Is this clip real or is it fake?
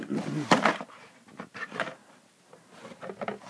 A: real